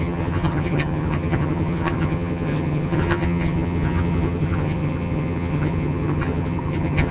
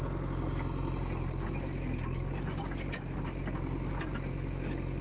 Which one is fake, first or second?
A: first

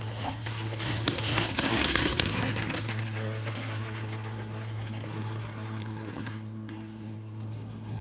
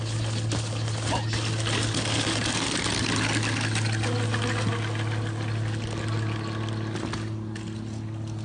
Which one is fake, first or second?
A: first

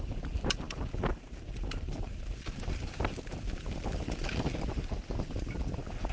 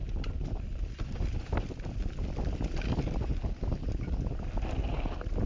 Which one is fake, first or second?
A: first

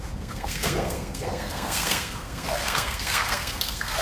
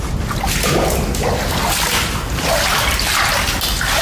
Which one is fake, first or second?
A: first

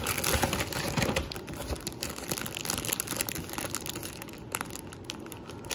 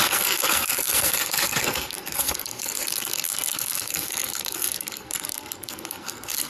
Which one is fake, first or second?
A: second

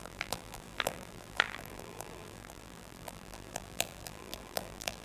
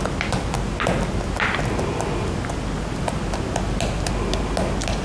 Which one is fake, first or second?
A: first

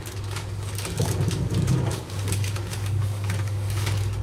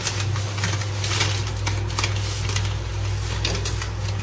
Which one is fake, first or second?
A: first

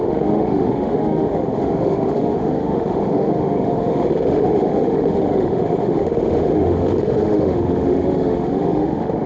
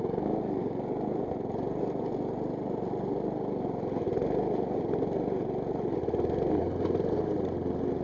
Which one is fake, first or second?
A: first